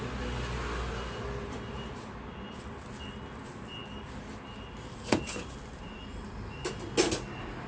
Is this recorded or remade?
recorded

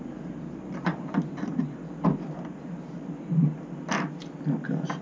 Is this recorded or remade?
recorded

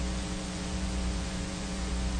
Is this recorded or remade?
remade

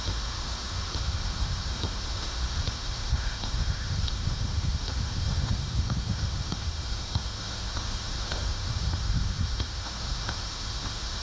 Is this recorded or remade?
remade